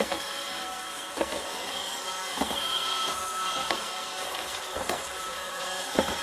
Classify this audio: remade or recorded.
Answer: remade